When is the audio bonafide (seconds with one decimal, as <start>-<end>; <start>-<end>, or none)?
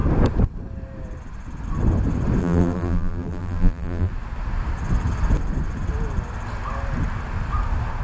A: 0.0-2.4; 4.1-8.0